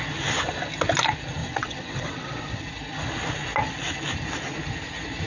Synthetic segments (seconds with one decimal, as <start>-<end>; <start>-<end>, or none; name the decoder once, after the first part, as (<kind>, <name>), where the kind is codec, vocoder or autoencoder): 1.4-2.7 (vocoder, WaveNeXt)